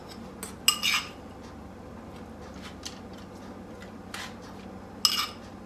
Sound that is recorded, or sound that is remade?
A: recorded